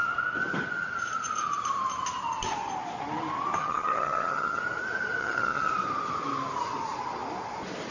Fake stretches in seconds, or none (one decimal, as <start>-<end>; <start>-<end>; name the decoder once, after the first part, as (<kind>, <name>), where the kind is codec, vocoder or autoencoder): 3.6-4.6 (vocoder, HiFi-GAN); 5.2-5.7